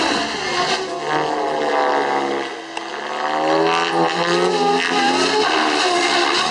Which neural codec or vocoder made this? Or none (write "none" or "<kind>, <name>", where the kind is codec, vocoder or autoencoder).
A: none